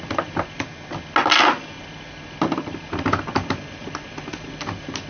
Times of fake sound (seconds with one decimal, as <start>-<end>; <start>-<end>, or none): none